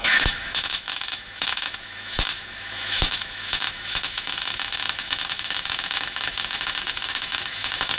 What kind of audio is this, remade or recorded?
remade